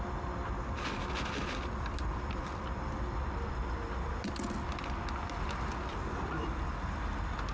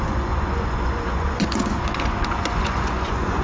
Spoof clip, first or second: second